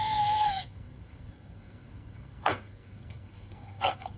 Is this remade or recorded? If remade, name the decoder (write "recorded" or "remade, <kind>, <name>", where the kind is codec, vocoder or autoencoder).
remade, codec, SNAC